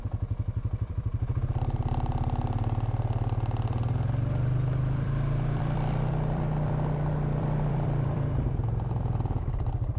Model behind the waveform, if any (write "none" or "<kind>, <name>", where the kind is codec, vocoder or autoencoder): vocoder, BigVGAN v2